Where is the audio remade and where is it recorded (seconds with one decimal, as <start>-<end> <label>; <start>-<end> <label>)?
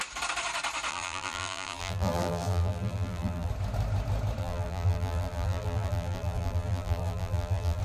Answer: 0.0-0.9 recorded; 0.9-3.5 remade; 3.5-4.4 recorded; 4.4-7.8 remade